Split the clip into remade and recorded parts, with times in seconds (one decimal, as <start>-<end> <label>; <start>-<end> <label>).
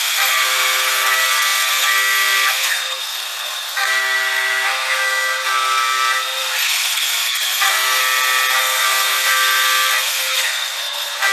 0.0-8.0 remade; 8.0-8.6 recorded; 8.6-11.3 remade